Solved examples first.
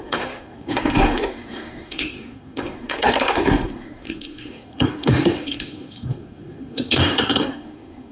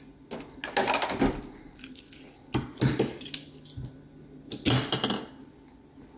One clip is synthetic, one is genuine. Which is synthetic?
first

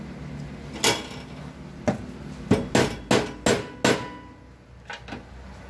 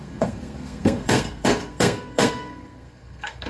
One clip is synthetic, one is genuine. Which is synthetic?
second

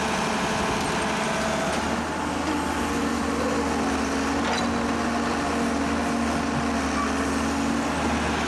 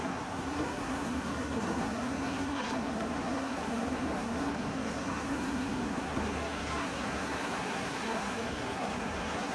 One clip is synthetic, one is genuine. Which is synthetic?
second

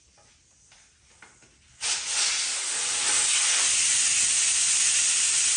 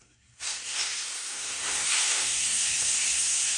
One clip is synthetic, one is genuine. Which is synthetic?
second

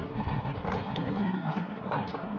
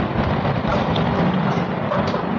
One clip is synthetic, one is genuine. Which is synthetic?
first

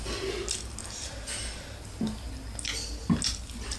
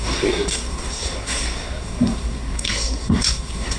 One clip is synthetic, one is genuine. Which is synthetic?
second